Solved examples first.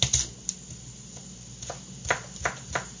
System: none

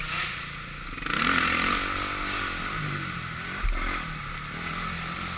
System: none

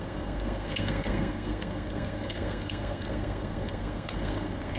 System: codec, SNAC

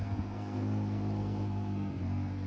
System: codec, SNAC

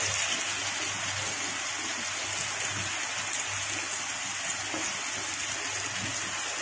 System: none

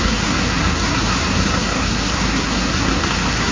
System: codec, SNAC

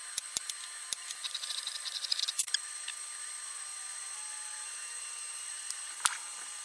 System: none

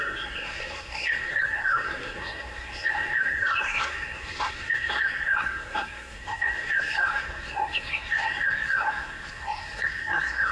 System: codec, SNAC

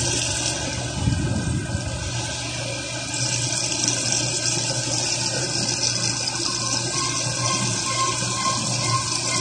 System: none